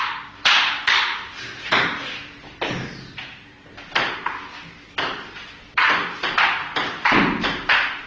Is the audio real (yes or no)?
yes